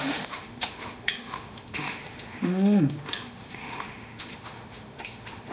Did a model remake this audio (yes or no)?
yes